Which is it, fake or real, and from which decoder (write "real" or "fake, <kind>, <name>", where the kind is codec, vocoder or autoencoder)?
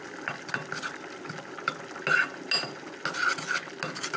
real